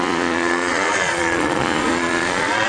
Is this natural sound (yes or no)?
no